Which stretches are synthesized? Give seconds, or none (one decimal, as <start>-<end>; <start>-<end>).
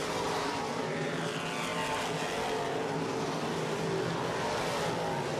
0.0-1.2